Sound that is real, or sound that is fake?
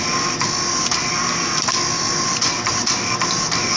real